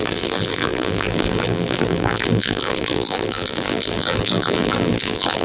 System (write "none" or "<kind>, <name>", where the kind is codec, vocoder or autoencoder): vocoder, BigVGAN v2